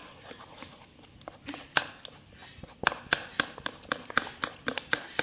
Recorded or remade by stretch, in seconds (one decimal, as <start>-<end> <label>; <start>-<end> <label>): 0.0-5.2 recorded